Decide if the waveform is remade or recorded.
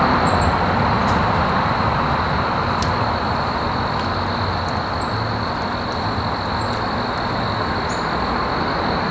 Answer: recorded